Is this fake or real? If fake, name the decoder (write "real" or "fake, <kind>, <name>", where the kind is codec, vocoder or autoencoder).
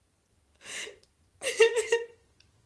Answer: fake, vocoder, Vocos